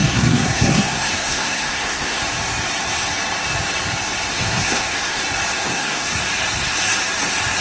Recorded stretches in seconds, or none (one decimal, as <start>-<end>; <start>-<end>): 2.2-4.3; 5.2-5.7; 6.2-7.6